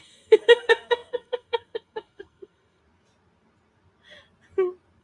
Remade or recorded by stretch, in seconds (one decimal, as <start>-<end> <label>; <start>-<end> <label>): 0.0-2.8 remade; 2.8-5.0 recorded